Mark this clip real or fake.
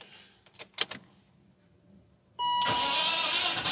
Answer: real